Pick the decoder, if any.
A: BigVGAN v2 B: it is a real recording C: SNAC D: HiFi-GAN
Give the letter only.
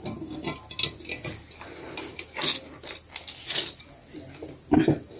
B